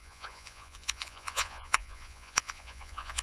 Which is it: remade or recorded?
remade